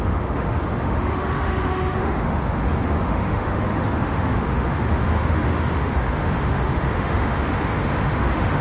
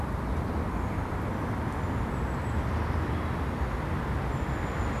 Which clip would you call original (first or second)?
second